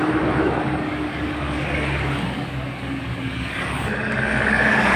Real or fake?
fake